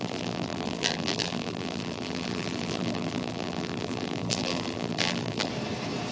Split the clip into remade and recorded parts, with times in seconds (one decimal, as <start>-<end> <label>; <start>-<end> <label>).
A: 0.0-5.5 remade; 5.5-6.1 recorded